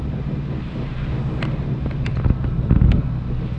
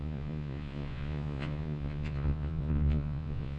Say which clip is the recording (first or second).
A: first